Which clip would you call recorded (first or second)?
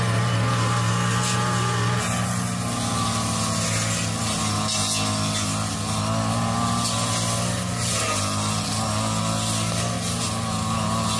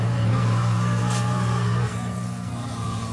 first